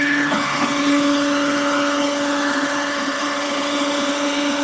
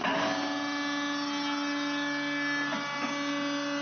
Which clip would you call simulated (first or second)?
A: first